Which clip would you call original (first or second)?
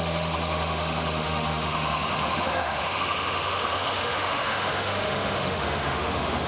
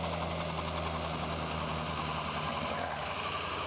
second